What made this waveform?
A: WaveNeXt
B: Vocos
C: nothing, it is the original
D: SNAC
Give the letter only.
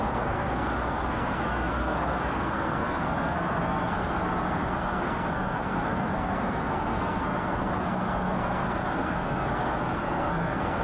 D